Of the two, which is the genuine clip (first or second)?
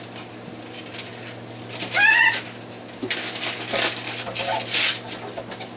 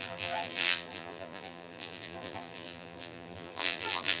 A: first